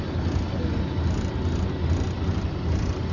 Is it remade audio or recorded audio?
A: recorded